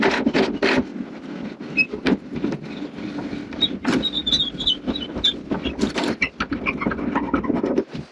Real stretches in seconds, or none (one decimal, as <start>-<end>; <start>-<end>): 0.0-8.1